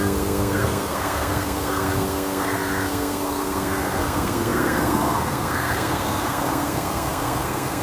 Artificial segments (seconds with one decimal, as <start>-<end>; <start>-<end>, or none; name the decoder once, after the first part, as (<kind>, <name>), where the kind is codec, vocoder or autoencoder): 0.0-7.8 (codec, SNAC)